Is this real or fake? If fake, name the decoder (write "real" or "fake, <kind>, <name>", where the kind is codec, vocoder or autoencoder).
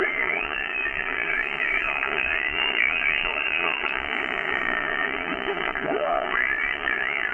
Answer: fake, vocoder, Vocos